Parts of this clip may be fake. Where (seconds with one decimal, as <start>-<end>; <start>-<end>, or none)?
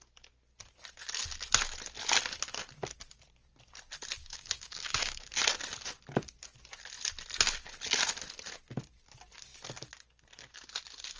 4.2-5.3